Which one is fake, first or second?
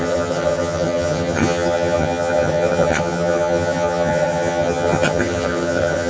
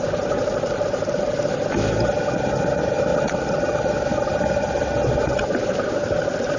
first